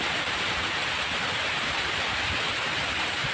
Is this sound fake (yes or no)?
no